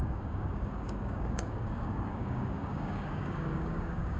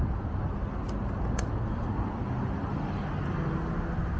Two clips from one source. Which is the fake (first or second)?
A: first